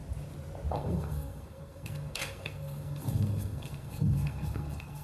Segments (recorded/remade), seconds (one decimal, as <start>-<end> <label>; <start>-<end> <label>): 0.0-0.7 recorded; 0.7-5.0 remade